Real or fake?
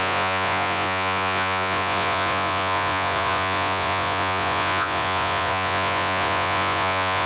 fake